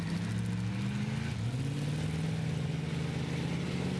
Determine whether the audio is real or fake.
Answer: real